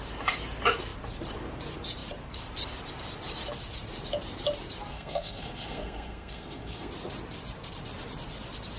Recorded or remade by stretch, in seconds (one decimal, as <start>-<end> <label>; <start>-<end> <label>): 0.0-4.9 recorded; 4.9-6.9 remade; 6.9-8.8 recorded